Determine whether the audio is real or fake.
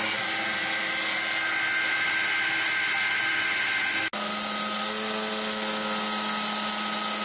real